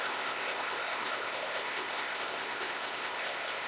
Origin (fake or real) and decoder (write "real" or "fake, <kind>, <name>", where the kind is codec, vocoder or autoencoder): fake, codec, ZipCodec